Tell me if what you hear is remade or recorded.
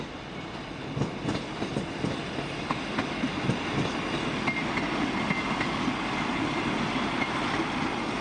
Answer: recorded